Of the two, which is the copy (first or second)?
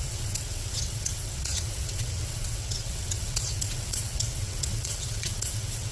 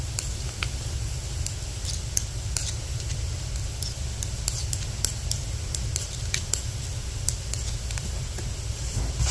first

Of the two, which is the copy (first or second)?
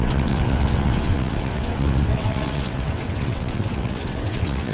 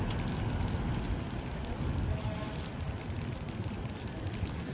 first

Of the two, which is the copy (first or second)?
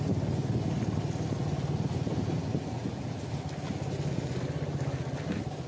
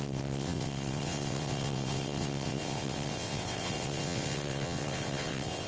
second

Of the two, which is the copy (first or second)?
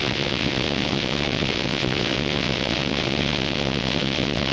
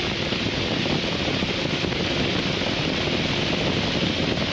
first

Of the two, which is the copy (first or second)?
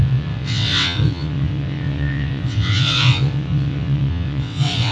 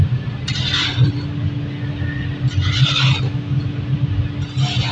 first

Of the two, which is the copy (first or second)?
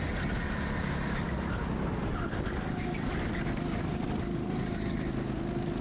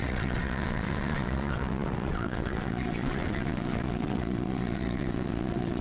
second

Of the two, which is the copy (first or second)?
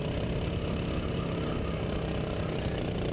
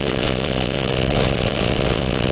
second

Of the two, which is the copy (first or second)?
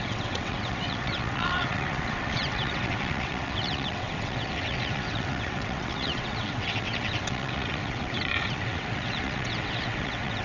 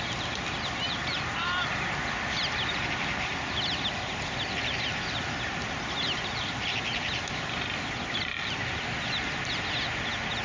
first